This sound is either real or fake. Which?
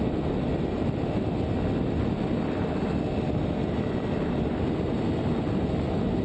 real